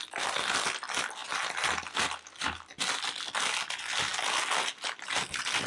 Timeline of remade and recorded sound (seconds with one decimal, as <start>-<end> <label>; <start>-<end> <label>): 0.0-5.7 recorded